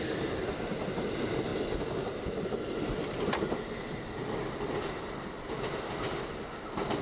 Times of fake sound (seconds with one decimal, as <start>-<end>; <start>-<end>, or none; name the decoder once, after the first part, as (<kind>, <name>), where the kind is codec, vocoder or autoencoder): none